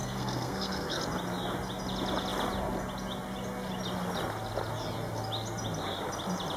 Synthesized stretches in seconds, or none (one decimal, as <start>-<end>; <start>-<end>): 0.0-1.0